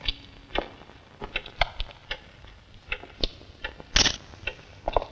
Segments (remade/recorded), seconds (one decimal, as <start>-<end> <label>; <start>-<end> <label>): 0.0-5.1 recorded